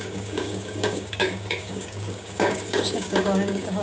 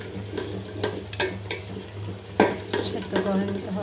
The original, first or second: second